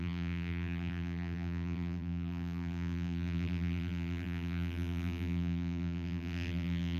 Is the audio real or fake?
fake